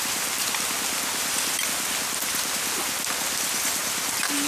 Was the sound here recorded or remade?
recorded